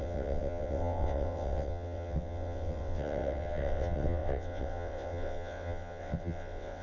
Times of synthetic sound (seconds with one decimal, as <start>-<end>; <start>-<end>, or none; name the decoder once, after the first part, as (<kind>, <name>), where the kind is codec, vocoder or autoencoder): 0.0-6.8 (vocoder, WaveNeXt)